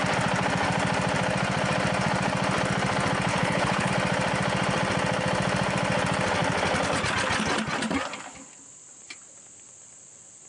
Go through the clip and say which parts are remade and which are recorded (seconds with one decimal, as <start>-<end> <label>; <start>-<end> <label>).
0.0-3.3 recorded; 3.3-3.9 remade; 3.9-10.5 recorded